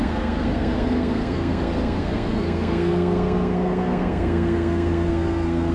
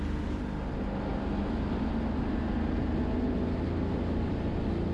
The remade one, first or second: first